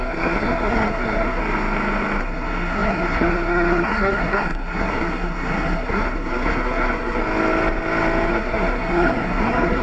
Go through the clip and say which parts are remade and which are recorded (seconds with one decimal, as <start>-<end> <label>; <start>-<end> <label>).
0.0-1.4 remade; 1.4-2.2 recorded; 2.2-7.2 remade; 7.2-8.3 recorded; 8.3-9.8 remade